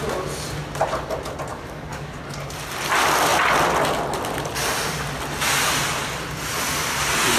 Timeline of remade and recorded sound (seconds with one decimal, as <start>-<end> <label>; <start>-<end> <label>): 0.0-1.5 recorded; 1.5-2.2 remade; 2.2-7.4 recorded